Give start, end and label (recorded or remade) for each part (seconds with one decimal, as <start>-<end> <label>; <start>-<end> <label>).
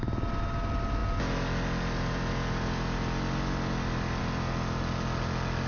0.0-5.7 recorded